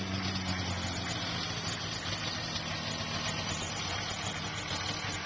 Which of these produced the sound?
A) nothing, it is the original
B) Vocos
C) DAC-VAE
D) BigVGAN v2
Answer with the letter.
A